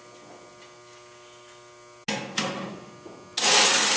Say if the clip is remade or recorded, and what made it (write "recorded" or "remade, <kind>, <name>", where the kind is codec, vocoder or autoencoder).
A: recorded